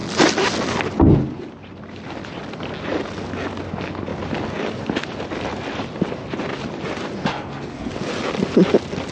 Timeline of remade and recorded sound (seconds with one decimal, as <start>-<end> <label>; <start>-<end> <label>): 0.0-7.3 recorded; 7.3-7.9 remade; 7.9-9.1 recorded